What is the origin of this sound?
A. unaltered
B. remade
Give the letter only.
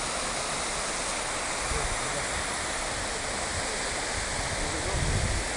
A